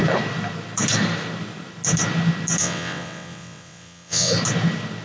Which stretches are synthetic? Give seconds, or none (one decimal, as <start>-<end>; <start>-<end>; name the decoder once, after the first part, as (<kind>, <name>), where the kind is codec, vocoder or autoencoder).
2.6-4.3 (vocoder, WaveNeXt)